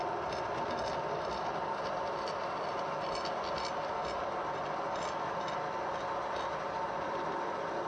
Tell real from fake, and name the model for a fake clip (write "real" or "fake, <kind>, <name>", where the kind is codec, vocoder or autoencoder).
real